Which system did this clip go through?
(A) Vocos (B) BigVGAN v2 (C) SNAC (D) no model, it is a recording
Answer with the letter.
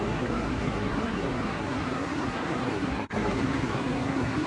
C